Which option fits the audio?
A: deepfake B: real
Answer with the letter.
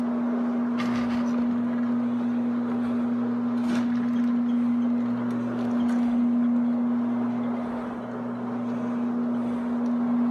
B